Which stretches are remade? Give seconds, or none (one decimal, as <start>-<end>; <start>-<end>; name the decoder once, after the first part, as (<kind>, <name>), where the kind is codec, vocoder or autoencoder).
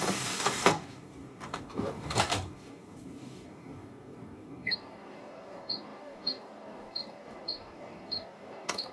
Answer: 0.0-8.9 (codec, DAC)